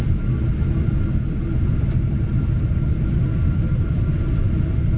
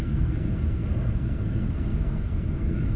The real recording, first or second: first